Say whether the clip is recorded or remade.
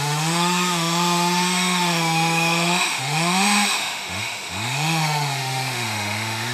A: remade